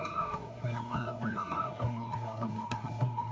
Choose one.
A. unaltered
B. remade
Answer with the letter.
B